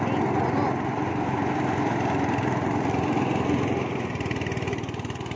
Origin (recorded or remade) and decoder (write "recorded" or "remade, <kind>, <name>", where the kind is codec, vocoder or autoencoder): recorded